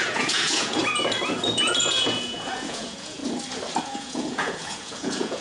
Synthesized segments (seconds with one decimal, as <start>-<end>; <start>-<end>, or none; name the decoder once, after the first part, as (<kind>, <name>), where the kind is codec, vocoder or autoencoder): 0.0-0.8 (vocoder, Vocos); 1.4-3.2; 3.8-5.4